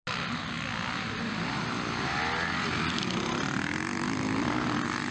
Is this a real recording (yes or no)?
yes